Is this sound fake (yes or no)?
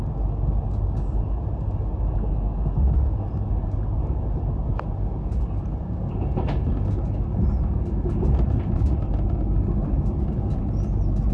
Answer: no